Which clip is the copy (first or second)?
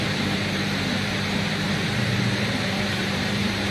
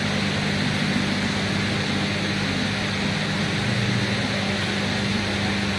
first